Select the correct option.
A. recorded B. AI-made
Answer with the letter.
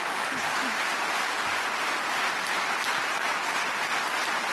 A